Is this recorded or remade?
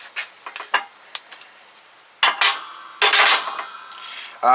recorded